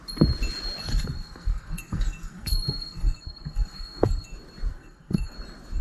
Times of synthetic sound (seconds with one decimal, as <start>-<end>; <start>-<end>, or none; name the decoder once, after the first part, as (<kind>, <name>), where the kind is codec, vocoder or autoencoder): 0.8-4.3 (codec, SNAC); 4.7-5.3